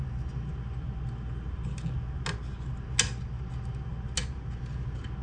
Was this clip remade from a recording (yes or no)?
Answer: no